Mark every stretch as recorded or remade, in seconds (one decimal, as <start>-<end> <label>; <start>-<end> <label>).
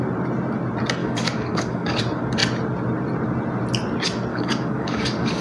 0.0-1.0 recorded; 1.0-2.0 remade; 2.0-4.3 recorded; 4.3-5.4 remade